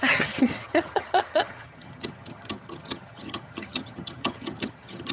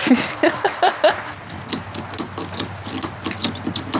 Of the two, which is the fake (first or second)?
first